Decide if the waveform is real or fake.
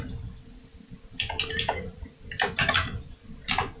real